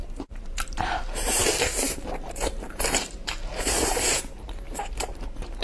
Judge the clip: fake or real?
fake